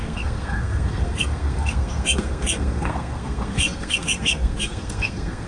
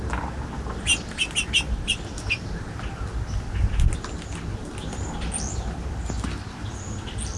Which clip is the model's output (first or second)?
first